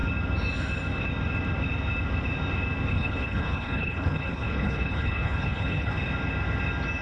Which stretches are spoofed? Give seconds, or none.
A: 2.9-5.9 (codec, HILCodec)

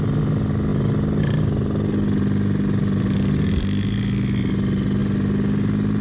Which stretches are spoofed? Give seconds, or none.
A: none

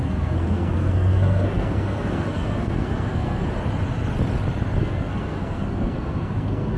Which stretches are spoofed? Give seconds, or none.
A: 0.0-3.4 (codec, SNAC); 4.8-6.8

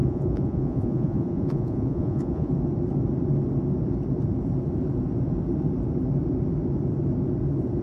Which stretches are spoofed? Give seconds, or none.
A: 0.0-2.5 (vocoder, Vocos)

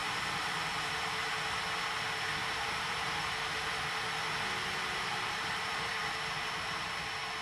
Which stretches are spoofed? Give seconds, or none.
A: 0.0-0.9 (vocoder, BigVGAN v2); 2.4-3.7; 5.1-5.9

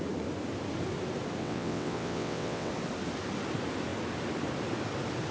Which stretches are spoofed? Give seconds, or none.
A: 1.4-2.7 (vocoder, WaveNeXt)